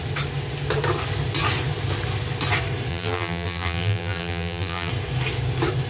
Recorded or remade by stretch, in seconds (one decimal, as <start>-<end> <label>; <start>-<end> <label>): 0.0-2.9 recorded; 2.9-4.9 remade; 4.9-5.9 recorded